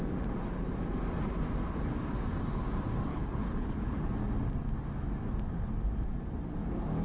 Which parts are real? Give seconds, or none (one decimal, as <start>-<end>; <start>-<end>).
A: 0.0-3.1; 4.1-7.0